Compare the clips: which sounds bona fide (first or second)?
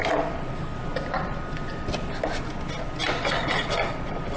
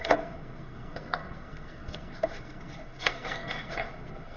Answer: first